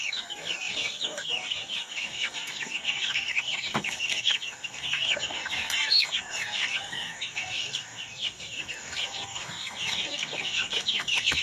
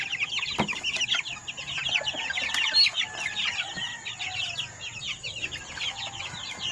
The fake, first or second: first